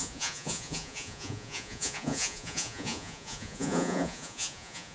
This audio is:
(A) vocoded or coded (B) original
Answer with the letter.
A